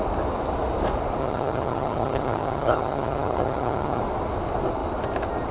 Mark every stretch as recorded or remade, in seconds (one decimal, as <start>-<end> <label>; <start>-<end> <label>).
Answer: 0.0-1.2 recorded; 1.2-4.0 remade; 4.0-5.5 recorded